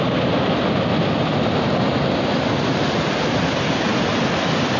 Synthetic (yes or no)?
no